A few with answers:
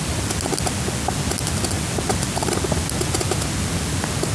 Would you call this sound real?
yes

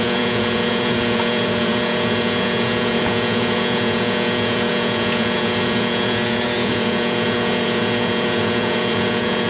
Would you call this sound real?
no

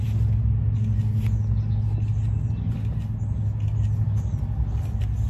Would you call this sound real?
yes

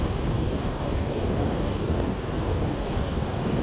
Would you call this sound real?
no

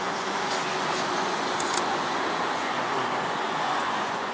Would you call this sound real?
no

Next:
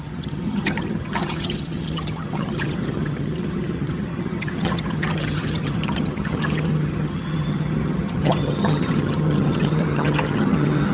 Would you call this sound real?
no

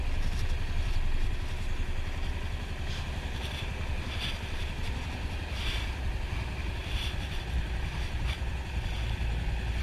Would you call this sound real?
yes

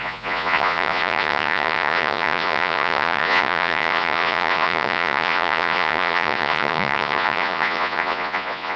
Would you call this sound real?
no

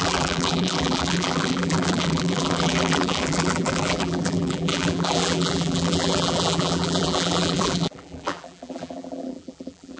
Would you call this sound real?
no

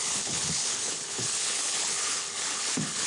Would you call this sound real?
no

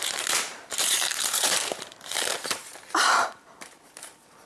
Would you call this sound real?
no